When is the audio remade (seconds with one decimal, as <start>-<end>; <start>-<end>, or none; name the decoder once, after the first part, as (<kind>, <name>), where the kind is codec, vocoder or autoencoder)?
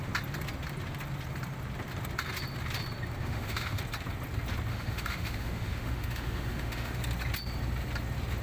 3.2-3.8 (autoencoder, DAC-VAE); 4.7-7.0